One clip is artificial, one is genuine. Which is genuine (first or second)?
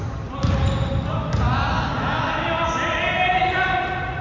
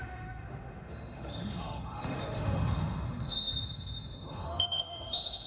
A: first